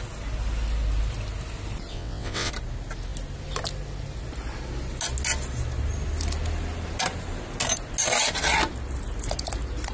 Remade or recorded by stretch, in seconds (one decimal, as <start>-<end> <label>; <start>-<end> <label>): 0.0-1.9 recorded; 1.9-2.5 remade; 2.5-9.9 recorded